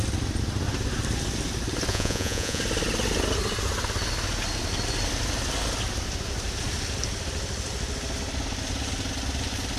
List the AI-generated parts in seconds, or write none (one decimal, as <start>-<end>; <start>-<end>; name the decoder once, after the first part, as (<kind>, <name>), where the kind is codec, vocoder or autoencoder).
1.9-2.6 (vocoder, Vocos)